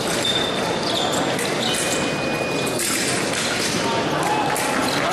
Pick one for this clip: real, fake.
real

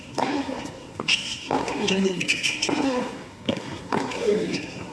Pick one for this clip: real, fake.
fake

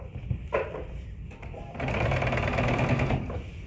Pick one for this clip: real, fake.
real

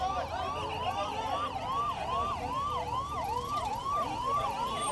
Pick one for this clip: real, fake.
real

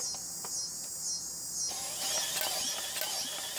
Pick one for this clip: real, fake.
real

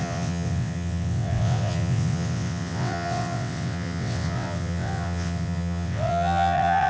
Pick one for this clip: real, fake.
fake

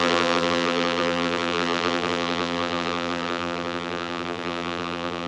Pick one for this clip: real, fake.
fake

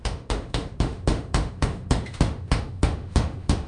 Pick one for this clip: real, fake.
fake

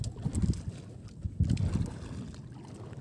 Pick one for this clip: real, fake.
real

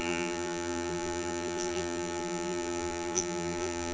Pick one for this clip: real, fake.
fake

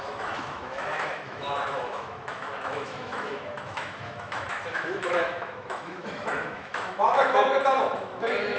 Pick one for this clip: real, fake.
fake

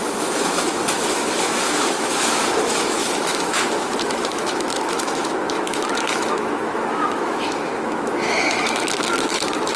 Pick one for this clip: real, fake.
fake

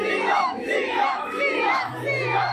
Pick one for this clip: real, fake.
fake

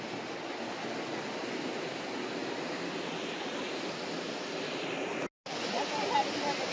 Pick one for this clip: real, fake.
real